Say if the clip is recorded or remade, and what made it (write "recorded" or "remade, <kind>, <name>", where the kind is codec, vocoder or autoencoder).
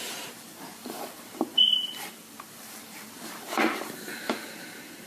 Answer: remade, vocoder, BigVGAN v2